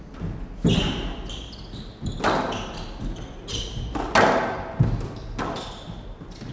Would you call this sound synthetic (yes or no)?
no